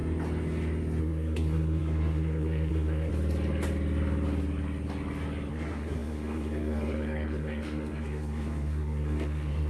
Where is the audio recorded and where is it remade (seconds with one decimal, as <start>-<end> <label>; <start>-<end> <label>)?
0.0-1.0 recorded; 1.0-3.1 remade; 3.1-5.5 recorded; 5.5-9.7 remade